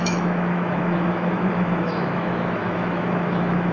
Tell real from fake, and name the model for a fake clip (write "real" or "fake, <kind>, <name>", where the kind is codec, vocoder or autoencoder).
fake, autoencoder, DAC-VAE